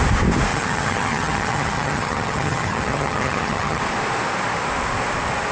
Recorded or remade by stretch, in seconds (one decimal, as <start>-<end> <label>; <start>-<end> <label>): 0.0-0.5 recorded; 0.5-3.8 remade; 3.8-5.5 recorded